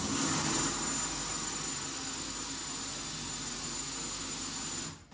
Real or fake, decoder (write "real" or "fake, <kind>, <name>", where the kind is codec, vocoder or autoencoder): real